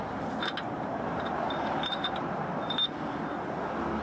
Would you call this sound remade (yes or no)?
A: no